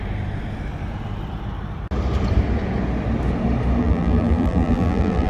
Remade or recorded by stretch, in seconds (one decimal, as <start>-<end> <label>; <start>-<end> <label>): 0.0-3.8 recorded; 3.8-5.3 remade